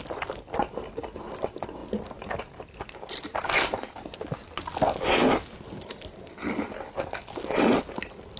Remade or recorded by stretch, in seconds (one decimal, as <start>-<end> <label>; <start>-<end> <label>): 0.0-8.4 recorded